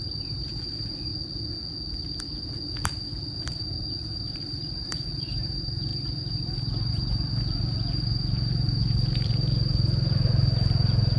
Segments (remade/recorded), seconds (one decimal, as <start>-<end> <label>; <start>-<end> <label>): 0.0-1.1 remade; 1.1-3.4 recorded; 3.4-11.2 remade

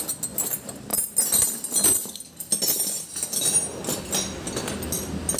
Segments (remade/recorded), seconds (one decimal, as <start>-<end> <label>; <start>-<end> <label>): 0.0-5.4 recorded

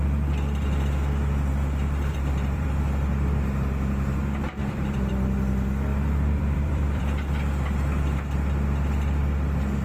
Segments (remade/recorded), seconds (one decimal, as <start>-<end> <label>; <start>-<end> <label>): 0.0-1.5 recorded; 1.5-2.8 remade; 2.8-4.6 recorded; 4.6-5.1 remade; 5.1-5.9 recorded; 5.9-7.0 remade; 7.0-9.8 recorded

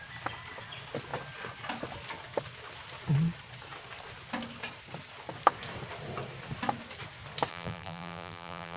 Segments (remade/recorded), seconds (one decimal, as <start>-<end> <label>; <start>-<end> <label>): 0.0-7.5 recorded; 7.5-8.8 remade

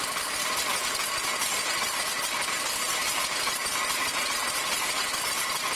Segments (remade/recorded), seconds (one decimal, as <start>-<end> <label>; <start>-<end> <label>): 0.0-5.8 recorded

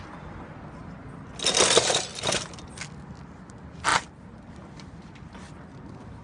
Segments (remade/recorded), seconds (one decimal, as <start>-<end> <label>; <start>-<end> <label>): 0.0-3.9 recorded; 3.9-4.5 remade; 4.5-6.2 recorded

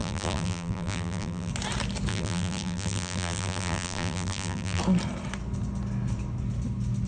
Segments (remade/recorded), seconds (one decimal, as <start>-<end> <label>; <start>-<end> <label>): 0.0-1.5 remade; 1.5-2.1 recorded; 2.1-4.8 remade; 4.8-7.1 recorded

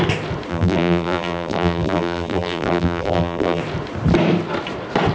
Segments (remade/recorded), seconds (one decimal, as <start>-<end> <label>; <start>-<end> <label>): 0.0-0.5 recorded; 0.5-3.6 remade; 3.6-5.1 recorded